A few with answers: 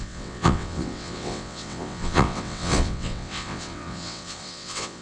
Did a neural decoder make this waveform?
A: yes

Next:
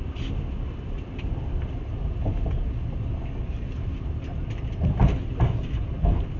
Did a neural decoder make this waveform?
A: no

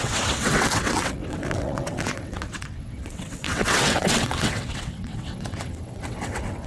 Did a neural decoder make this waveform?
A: yes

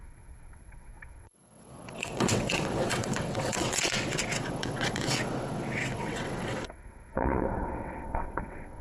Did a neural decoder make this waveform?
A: yes